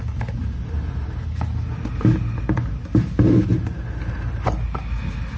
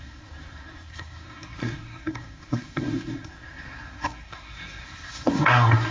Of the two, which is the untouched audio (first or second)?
first